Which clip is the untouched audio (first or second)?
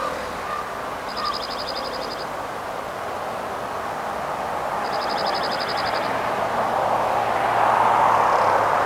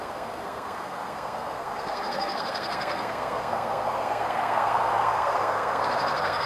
first